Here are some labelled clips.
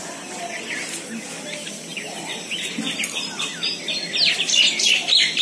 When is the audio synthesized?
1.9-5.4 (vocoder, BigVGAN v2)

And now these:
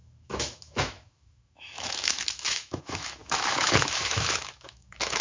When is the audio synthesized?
0.0-5.2 (autoencoder, DAC-VAE)

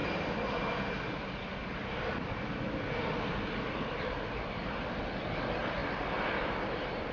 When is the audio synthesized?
none

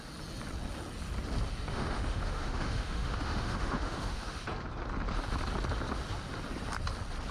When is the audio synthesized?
1.7-4.4 (autoencoder, DAC-VAE)